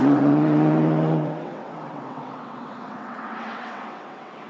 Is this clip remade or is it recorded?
remade